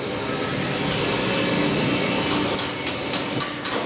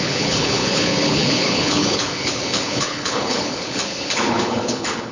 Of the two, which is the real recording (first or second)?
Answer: first